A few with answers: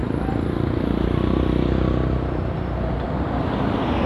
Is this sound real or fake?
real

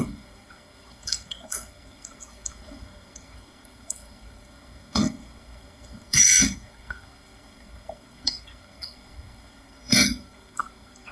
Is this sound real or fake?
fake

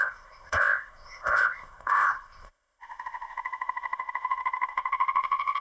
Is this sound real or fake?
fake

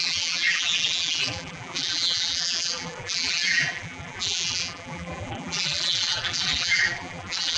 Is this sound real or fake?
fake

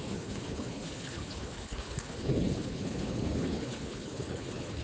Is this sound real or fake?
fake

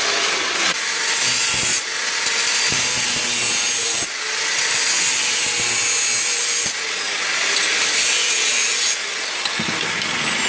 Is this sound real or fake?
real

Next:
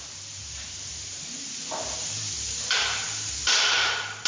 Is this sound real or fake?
fake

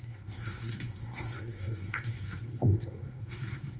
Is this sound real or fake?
fake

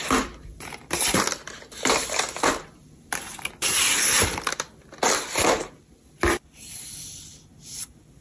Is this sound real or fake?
real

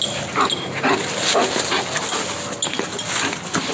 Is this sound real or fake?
real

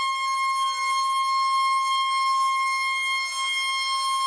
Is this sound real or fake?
real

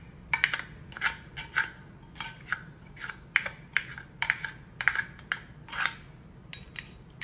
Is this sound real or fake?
real